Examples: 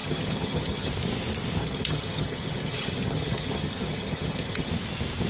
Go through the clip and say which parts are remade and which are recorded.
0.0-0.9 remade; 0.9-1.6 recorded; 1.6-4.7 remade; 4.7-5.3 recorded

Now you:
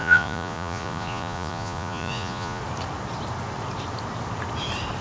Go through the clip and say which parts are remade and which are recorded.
0.0-2.6 remade; 2.6-5.0 recorded

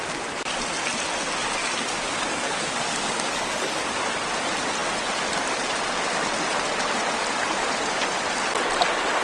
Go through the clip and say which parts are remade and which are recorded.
0.0-1.6 recorded; 1.6-4.1 remade; 4.1-9.2 recorded

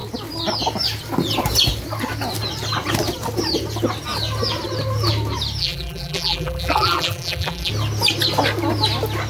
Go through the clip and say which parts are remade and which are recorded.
0.0-5.6 recorded; 5.6-7.7 remade; 7.7-9.3 recorded

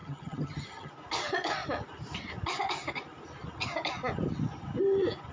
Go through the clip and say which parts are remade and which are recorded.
0.0-0.9 remade; 0.9-5.3 recorded

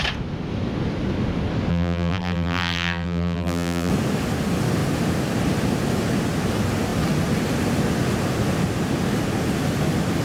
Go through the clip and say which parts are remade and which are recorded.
0.0-1.7 recorded; 1.7-3.9 remade; 3.9-10.2 recorded